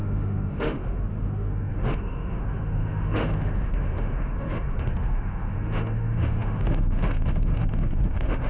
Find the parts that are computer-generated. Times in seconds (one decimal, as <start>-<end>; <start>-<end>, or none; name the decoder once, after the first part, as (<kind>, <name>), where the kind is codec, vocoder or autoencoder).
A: 0.0-8.5 (autoencoder, DAC-VAE)

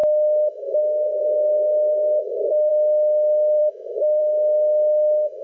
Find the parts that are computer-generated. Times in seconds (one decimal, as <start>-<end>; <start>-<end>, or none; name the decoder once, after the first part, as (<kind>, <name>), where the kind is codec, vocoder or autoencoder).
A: 0.0-2.7 (autoencoder, DAC-VAE); 3.6-4.2

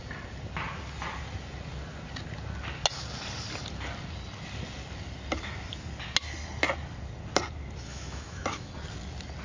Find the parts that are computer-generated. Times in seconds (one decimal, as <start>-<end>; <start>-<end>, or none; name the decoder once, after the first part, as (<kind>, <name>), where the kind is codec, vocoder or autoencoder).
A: 7.9-8.7 (autoencoder, DAC-VAE)

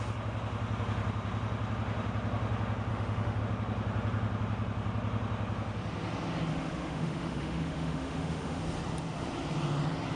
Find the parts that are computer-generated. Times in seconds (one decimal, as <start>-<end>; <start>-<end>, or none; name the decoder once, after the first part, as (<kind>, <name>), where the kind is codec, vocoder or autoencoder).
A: 2.9-3.4 (autoencoder, DAC-VAE); 6.5-8.6

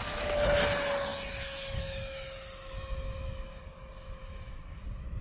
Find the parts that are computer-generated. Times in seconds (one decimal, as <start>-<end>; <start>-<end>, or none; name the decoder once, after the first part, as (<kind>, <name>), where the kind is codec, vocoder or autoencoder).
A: 1.1-3.6 (autoencoder, DAC-VAE); 4.2-4.8

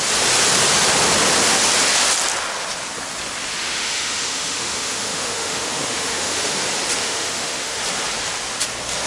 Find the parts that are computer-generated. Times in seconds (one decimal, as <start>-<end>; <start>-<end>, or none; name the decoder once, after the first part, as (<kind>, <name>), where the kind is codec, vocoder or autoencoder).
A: 3.6-6.6 (autoencoder, DAC-VAE); 7.0-7.8